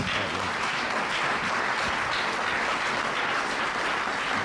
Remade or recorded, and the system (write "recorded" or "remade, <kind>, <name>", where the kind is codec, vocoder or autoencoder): recorded